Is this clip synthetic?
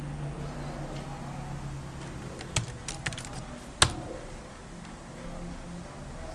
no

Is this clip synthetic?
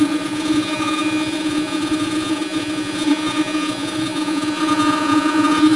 yes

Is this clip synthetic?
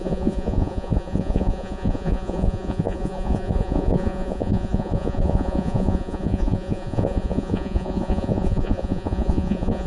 yes